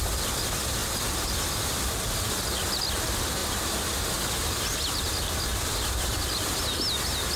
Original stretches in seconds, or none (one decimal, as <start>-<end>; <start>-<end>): 0.0-0.8; 1.7-5.5; 6.5-7.4